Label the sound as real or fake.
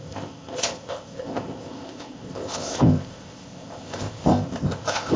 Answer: fake